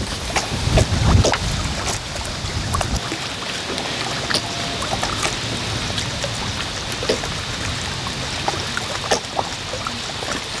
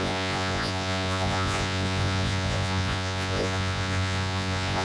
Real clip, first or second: first